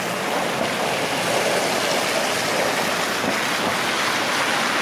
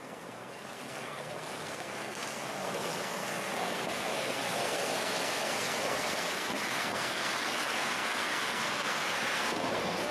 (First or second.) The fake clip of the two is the second